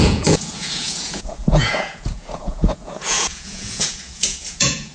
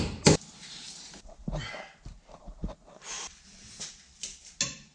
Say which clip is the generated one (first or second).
first